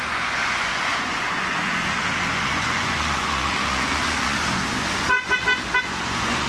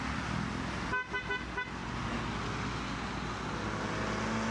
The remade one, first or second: first